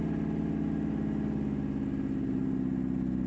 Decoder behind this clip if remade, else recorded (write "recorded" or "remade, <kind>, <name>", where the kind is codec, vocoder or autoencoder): recorded